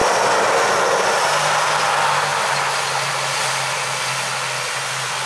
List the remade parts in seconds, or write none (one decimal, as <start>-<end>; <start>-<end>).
none